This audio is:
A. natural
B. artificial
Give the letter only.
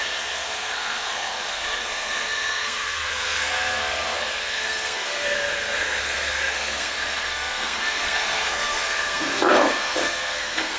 B